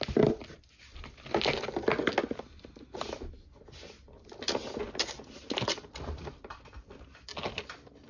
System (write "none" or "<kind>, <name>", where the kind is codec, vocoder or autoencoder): none